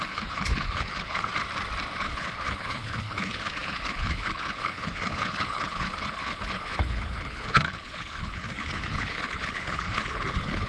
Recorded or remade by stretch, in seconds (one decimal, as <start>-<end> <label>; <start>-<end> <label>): 0.0-1.3 remade; 1.3-2.0 recorded; 2.0-10.7 remade